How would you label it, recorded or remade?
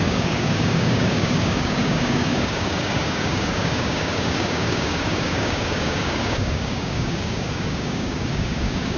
remade